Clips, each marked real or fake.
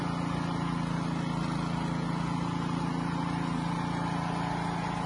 real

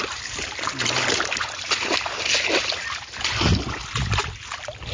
real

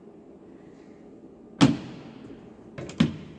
real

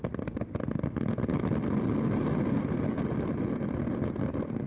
real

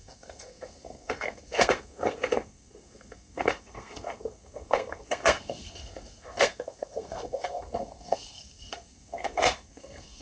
fake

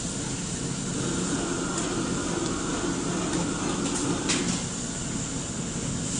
real